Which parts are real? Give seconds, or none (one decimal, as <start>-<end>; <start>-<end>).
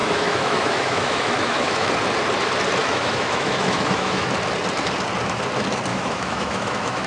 1.9-2.8; 4.3-5.9